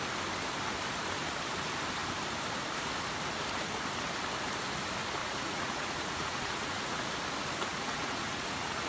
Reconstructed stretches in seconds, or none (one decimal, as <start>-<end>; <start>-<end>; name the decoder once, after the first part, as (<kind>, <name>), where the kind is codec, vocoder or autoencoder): 5.2-7.0 (vocoder, Vocos); 7.7-8.9